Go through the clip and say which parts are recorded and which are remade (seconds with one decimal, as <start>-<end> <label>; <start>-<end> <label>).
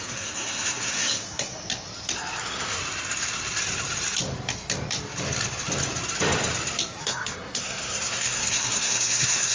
0.0-1.5 remade; 1.5-2.4 recorded; 2.4-2.8 remade; 2.8-7.0 recorded; 7.0-9.5 remade